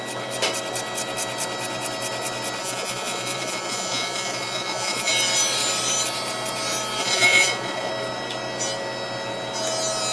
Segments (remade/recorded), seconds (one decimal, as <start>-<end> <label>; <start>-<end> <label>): 0.0-2.6 recorded; 2.6-5.1 remade; 5.1-7.0 recorded; 7.0-7.9 remade; 7.9-10.1 recorded